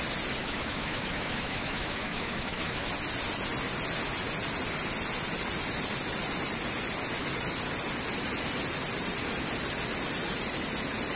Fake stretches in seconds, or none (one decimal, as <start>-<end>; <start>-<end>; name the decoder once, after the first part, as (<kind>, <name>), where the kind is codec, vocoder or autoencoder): 0.4-2.9 (autoencoder, DAC-VAE)

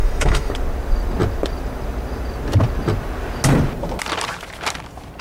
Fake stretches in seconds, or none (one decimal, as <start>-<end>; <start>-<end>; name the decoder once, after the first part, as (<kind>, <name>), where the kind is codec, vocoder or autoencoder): 0.0-0.5 (autoencoder, DAC-VAE)

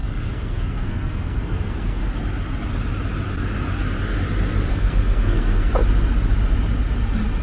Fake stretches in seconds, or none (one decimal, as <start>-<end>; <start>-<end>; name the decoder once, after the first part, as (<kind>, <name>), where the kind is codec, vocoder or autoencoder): 0.0-2.0 (codec, SNAC); 4.7-5.7

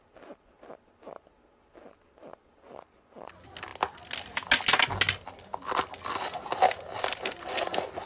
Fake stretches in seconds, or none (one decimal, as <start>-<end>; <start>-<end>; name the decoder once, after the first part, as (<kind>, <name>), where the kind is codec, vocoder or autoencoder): none

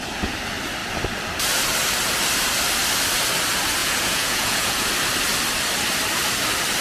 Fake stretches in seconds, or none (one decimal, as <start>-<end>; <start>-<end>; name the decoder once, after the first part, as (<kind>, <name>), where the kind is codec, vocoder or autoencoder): 3.8-4.9 (vocoder, Vocos)

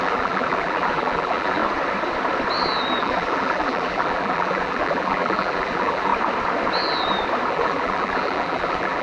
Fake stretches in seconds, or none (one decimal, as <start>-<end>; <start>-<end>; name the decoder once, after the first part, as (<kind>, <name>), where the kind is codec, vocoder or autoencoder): 0.0-1.6 (vocoder, BigVGAN v2); 3.0-6.1; 7.5-9.0

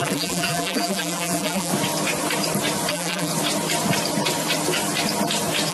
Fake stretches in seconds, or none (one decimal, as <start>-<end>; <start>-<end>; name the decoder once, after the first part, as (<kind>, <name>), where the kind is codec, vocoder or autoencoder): 0.0-1.7 (vocoder, BigVGAN v2); 2.9-3.3

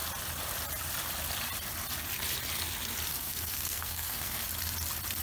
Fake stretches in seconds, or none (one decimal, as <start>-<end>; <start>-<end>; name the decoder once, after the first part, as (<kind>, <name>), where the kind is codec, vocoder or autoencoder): 3.1-4.4 (codec, SNAC)